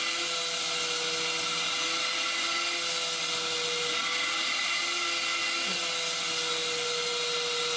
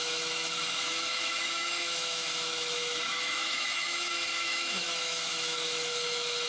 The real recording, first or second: first